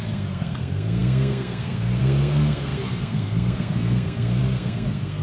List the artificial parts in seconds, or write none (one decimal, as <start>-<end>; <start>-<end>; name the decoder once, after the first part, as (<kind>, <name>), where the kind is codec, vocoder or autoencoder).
0.0-5.2 (codec, SNAC)